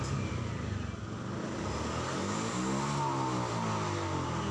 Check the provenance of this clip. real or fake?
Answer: real